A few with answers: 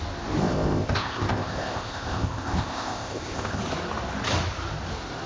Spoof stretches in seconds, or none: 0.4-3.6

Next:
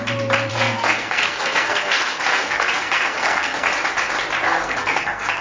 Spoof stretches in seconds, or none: 0.5-3.7; 4.4-5.4

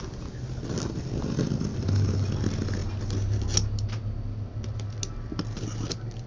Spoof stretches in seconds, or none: none